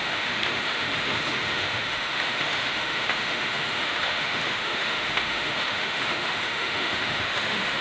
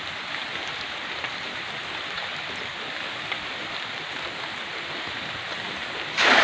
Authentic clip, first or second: second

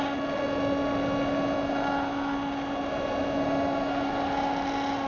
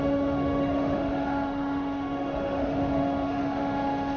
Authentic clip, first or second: first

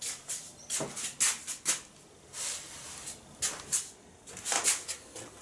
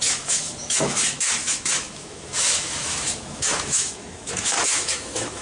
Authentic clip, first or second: first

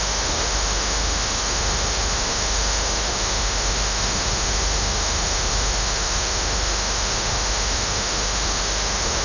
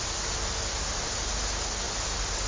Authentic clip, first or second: second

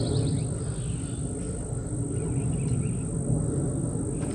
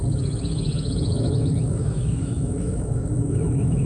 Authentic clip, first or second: first